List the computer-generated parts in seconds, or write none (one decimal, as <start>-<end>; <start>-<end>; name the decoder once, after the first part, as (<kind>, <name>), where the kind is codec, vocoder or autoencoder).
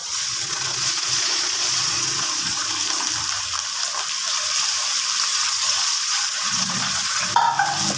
0.0-2.7 (vocoder, Vocos); 5.3-7.3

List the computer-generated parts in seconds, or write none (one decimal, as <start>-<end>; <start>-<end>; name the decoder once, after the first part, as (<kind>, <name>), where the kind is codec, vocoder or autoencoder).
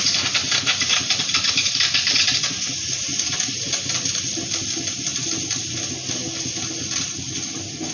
none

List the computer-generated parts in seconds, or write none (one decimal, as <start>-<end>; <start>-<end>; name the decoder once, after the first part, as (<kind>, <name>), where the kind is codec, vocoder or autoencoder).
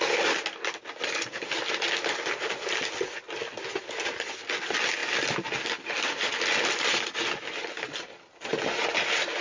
none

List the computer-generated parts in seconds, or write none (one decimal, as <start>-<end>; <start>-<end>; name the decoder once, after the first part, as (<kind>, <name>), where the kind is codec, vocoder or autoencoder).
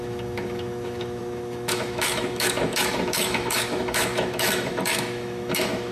0.0-5.9 (autoencoder, DAC-VAE)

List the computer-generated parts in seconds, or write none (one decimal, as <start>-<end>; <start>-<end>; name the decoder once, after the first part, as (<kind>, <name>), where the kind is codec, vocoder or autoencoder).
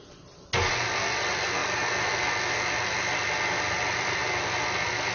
none